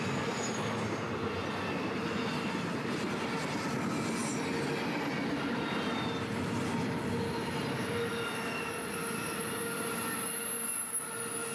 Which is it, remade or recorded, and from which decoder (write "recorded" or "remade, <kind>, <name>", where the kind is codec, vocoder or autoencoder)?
recorded